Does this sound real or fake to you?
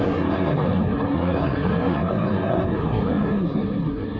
fake